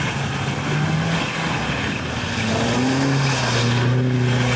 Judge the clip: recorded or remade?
recorded